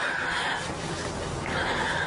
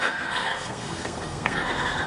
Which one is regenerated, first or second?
second